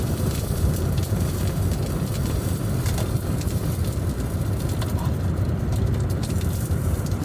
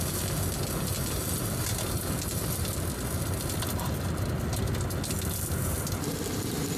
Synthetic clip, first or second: first